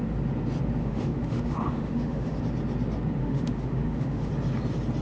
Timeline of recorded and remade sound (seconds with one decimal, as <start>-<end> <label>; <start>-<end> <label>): 0.0-0.8 recorded; 0.8-2.4 remade; 2.4-3.2 recorded; 3.2-4.3 remade; 4.3-5.0 recorded